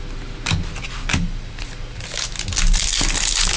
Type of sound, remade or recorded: recorded